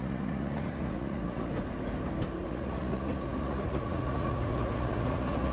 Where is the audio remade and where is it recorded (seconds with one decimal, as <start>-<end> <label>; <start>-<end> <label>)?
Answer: 0.0-1.5 remade; 1.5-2.5 recorded; 2.5-5.5 remade